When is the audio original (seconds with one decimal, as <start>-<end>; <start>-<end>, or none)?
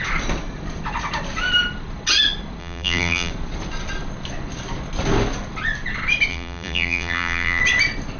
0.0-2.6; 3.3-6.3; 7.6-8.2